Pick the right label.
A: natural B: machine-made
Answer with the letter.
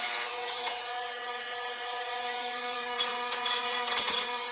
B